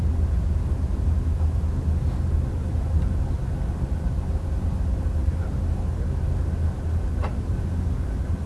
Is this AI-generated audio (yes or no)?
no